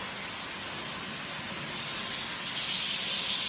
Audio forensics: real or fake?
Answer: real